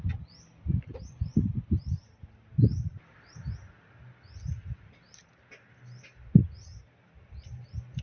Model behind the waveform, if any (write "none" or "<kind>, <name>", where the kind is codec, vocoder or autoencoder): none